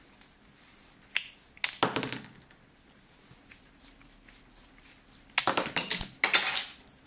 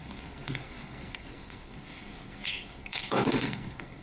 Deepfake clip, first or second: second